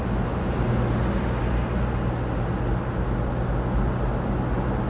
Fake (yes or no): no